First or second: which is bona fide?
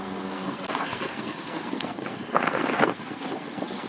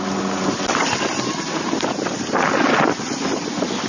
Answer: second